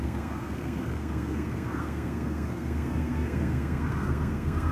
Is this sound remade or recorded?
remade